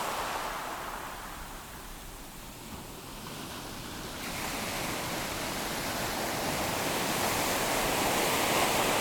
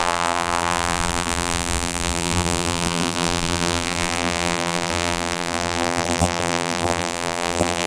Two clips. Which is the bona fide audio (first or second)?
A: first